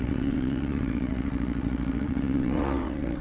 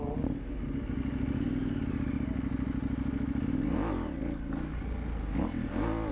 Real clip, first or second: second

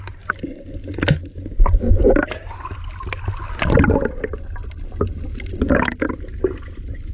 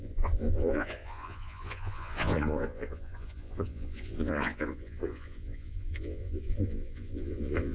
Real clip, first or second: first